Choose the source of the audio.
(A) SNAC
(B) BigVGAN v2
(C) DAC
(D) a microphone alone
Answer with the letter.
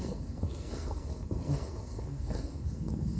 A